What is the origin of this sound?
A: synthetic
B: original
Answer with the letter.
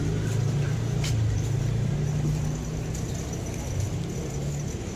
B